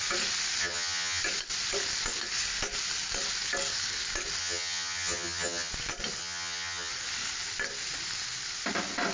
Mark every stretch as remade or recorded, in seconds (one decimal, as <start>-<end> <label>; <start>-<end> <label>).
0.0-0.6 recorded; 0.6-1.2 remade; 1.2-4.4 recorded; 4.4-5.7 remade; 5.7-6.2 recorded; 6.2-6.9 remade; 6.9-9.1 recorded

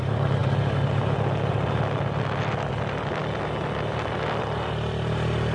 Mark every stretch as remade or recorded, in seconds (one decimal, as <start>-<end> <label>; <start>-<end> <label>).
0.0-5.5 recorded

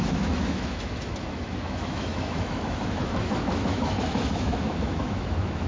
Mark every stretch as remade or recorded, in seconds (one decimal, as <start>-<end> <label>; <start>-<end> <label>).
0.0-5.7 remade

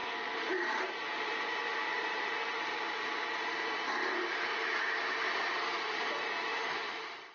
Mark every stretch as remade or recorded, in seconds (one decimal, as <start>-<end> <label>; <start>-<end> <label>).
0.0-4.5 remade; 4.5-5.4 recorded; 5.4-7.3 remade

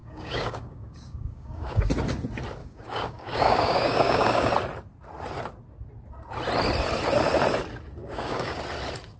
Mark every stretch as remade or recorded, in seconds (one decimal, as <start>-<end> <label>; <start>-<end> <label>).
0.0-1.9 remade; 1.9-2.6 recorded; 2.6-4.5 remade; 4.5-8.0 recorded; 8.0-8.6 remade; 8.6-9.2 recorded